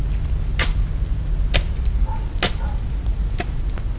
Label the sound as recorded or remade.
recorded